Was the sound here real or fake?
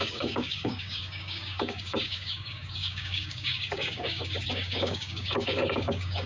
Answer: fake